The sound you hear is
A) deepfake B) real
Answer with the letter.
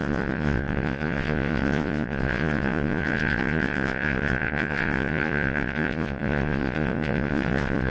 A